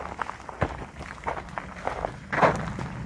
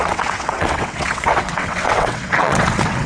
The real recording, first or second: first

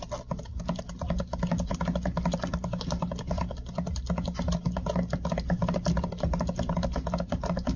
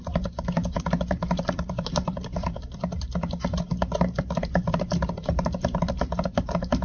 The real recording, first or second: first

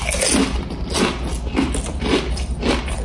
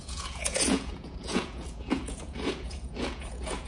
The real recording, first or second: first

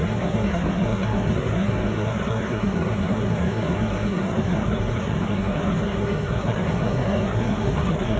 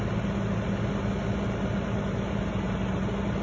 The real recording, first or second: second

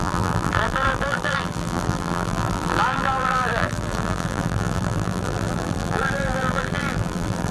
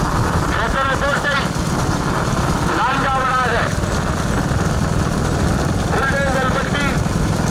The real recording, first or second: second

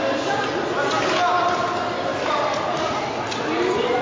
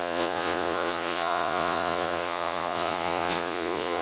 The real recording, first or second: first